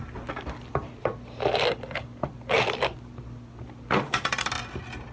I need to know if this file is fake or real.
real